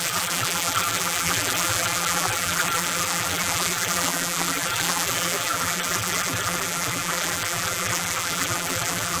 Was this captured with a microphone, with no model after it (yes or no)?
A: no